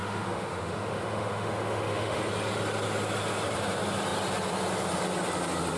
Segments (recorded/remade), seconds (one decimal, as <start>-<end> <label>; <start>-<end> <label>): 0.0-2.2 remade; 2.2-5.8 recorded